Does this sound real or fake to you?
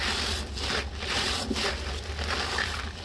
real